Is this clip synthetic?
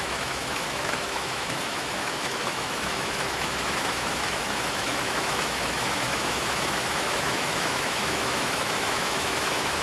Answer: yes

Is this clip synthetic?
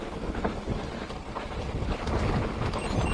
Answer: no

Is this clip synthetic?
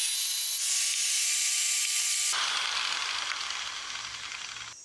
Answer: no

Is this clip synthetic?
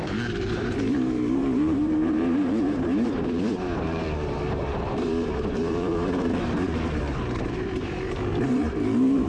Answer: yes